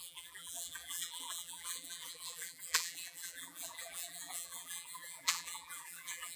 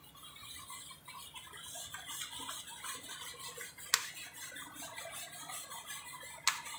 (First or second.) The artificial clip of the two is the first